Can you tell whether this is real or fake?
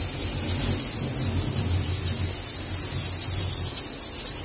real